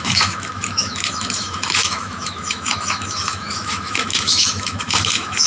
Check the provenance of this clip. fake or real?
fake